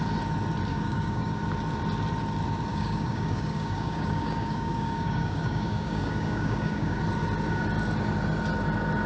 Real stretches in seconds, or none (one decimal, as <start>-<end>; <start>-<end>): 0.0-0.7; 1.4-2.7; 7.0-9.1